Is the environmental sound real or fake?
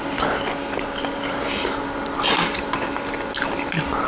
real